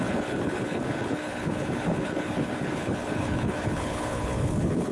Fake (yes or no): yes